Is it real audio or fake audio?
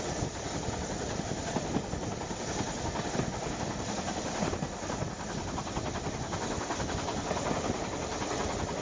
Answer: real